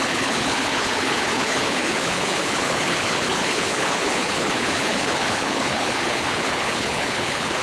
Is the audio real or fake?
fake